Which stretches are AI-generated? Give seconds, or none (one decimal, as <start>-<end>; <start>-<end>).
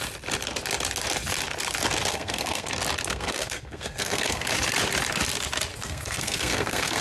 2.1-2.7; 3.1-4.5; 5.7-7.0